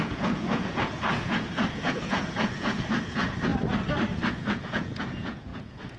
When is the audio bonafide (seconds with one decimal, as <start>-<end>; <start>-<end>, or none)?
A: 3.5-4.3